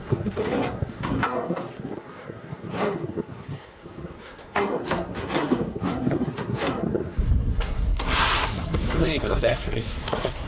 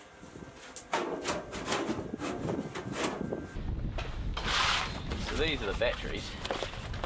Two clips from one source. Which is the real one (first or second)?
second